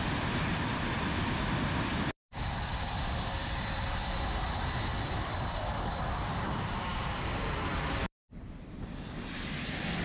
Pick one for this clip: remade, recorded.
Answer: remade